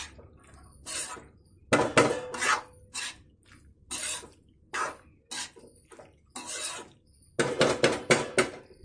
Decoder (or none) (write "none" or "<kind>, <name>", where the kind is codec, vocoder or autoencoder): none